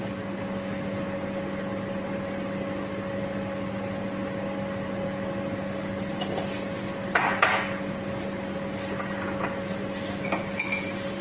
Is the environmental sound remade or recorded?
recorded